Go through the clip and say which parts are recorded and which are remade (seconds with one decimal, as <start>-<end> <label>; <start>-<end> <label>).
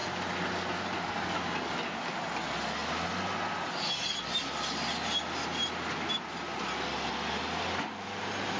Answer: 0.0-8.6 recorded